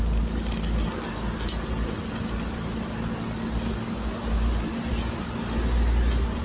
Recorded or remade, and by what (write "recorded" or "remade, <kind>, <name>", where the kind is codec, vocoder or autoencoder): recorded